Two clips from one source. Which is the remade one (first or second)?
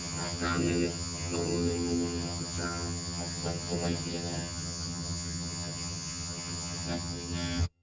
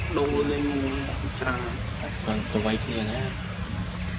first